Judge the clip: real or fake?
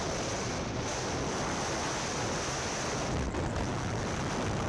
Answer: real